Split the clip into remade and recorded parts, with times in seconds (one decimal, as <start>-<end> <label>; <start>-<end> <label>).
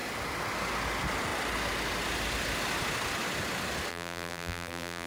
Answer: 0.0-3.9 recorded; 3.9-5.1 remade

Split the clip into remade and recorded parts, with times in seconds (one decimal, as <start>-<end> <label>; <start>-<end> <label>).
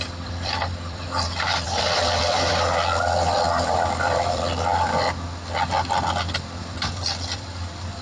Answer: 0.0-4.7 remade; 4.7-6.6 recorded; 6.6-8.0 remade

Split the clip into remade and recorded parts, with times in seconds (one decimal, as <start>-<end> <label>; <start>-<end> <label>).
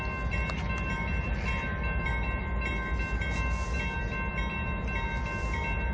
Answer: 0.0-5.9 recorded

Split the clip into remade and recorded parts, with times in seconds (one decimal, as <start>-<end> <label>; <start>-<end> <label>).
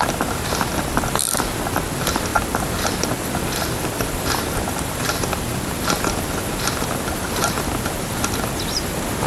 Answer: 0.0-2.3 recorded; 2.3-5.2 remade; 5.2-9.3 recorded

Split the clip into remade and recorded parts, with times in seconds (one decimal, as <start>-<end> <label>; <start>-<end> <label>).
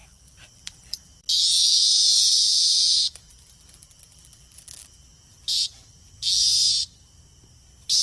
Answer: 0.0-1.8 remade; 1.8-2.5 recorded; 2.5-6.4 remade; 6.4-8.0 recorded